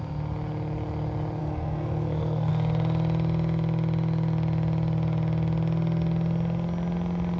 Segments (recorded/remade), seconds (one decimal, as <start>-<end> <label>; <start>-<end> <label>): 0.0-1.4 recorded; 1.4-2.5 remade; 2.5-7.4 recorded